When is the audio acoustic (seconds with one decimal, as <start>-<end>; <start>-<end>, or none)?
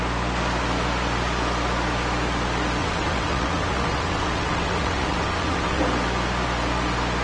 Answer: 0.0-2.8; 5.8-7.2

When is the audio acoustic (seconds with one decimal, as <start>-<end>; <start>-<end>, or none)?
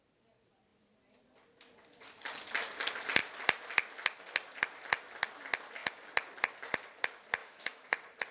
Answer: 0.0-7.4; 7.9-8.3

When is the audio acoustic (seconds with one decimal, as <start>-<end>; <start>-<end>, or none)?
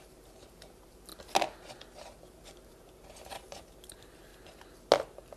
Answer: 1.1-2.3; 4.3-5.4